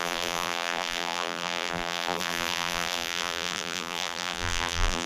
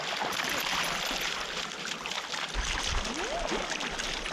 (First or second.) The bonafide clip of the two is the second